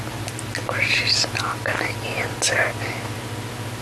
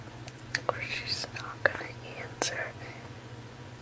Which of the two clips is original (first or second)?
first